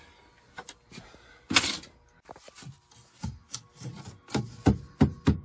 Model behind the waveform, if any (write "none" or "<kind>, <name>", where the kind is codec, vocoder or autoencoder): none